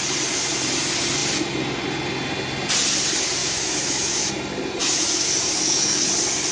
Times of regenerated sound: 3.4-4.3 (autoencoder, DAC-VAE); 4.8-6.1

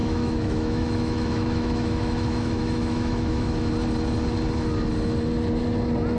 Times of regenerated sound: 0.0-3.7 (autoencoder, DAC-VAE)

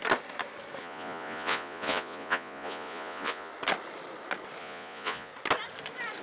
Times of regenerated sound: 0.8-3.5 (vocoder, Vocos); 4.6-5.3